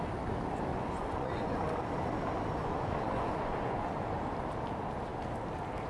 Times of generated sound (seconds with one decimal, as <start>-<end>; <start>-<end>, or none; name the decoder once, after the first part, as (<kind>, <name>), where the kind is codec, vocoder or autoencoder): 0.7-1.6 (vocoder, Vocos); 2.6-4.2